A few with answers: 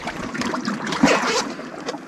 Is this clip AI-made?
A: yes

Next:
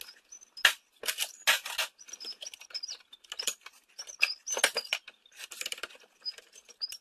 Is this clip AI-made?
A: no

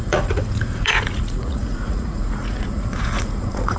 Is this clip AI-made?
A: yes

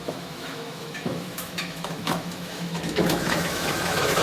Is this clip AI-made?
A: yes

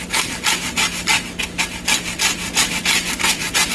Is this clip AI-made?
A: no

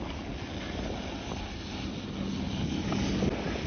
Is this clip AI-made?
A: no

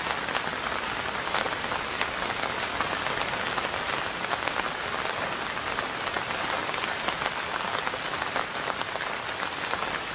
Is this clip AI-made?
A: no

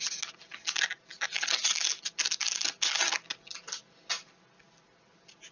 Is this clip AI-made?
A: no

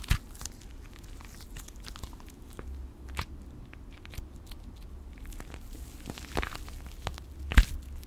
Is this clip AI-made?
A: no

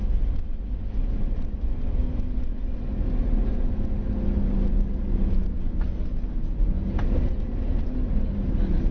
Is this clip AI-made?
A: no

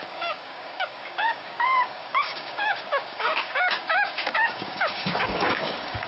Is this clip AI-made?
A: yes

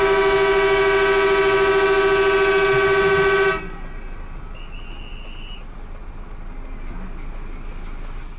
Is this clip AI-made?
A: no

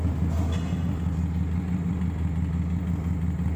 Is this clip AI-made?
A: no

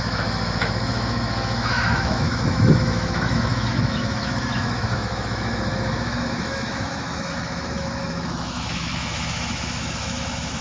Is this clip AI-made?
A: yes